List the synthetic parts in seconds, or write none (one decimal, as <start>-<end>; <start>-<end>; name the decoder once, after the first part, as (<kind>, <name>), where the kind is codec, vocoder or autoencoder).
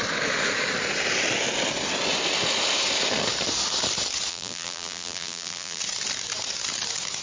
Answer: 4.3-5.8 (vocoder, BigVGAN v2)